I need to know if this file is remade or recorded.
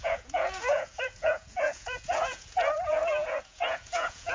remade